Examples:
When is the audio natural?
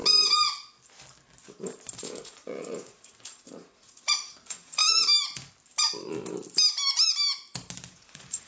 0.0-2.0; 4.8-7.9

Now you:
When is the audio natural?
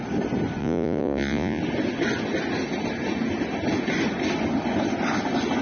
0.0-0.6; 1.6-5.6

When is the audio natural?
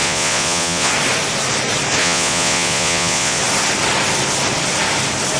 0.9-2.0; 3.4-5.4